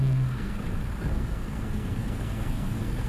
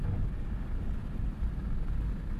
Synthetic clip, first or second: first